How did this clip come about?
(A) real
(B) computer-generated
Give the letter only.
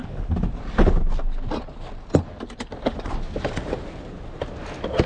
A